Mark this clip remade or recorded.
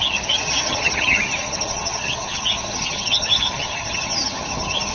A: remade